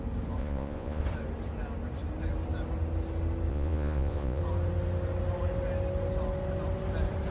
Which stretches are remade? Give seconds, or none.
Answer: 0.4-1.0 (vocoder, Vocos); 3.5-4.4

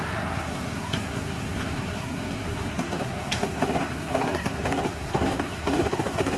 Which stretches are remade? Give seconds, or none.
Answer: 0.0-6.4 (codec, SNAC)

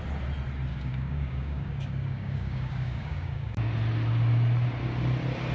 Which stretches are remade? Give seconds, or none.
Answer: 0.7-3.7 (codec, DAC)

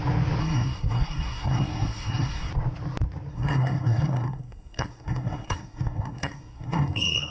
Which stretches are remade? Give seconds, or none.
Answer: 0.4-2.5 (codec, SNAC); 3.3-7.3

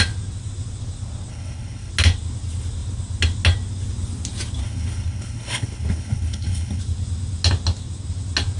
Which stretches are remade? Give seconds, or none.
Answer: 1.3-1.9 (codec, HILCodec); 4.6-6.8